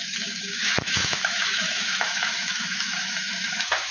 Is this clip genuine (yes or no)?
no